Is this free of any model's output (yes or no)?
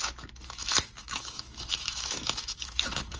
no